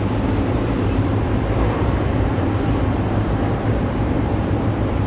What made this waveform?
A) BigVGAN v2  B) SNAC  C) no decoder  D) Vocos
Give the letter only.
A